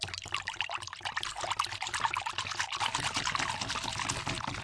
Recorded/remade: remade